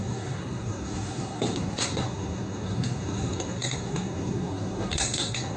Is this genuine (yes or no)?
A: no